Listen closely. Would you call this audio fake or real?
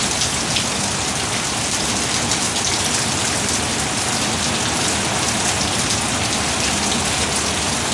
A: real